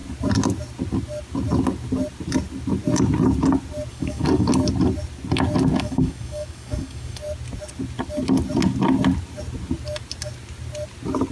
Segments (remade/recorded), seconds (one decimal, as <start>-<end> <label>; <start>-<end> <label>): 0.0-3.9 recorded; 3.9-4.5 remade; 4.5-5.8 recorded; 5.8-7.2 remade; 7.2-11.3 recorded